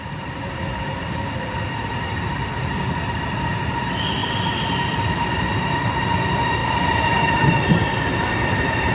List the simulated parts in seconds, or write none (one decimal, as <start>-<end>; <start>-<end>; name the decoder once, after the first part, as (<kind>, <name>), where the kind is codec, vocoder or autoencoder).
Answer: none